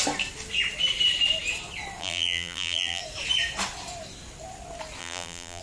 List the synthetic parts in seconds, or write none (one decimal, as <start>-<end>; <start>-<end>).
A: 2.0-3.0; 5.0-5.6